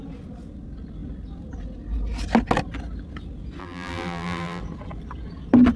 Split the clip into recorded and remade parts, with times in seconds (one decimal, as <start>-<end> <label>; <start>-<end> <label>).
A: 0.0-3.6 recorded; 3.6-4.6 remade; 4.6-5.8 recorded